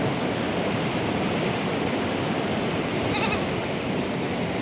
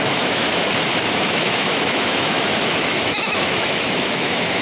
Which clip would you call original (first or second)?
first